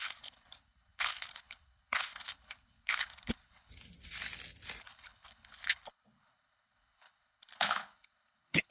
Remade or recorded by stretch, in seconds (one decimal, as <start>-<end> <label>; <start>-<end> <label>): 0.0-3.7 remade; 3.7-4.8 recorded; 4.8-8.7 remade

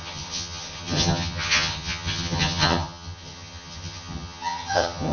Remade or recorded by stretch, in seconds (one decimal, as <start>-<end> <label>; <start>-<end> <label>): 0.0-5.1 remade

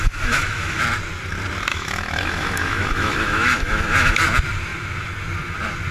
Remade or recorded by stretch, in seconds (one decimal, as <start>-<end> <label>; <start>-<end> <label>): 0.0-0.8 remade; 0.8-1.7 recorded; 1.7-4.2 remade; 4.2-5.9 recorded

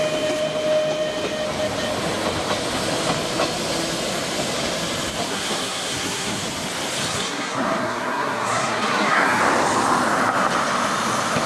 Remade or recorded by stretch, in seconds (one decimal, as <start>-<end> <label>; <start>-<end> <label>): 0.0-5.3 recorded; 5.3-6.4 remade; 6.4-7.1 recorded; 7.1-9.4 remade; 9.4-11.5 recorded

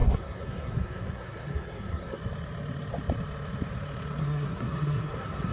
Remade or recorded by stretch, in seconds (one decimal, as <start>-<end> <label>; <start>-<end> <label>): 0.0-2.2 remade; 2.2-4.2 recorded; 4.2-5.5 remade

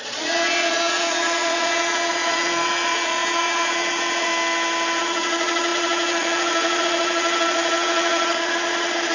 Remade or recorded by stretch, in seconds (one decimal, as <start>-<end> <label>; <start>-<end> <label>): 0.0-4.3 remade; 4.3-5.0 recorded; 5.0-9.1 remade